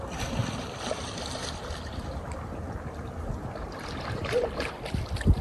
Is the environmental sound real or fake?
real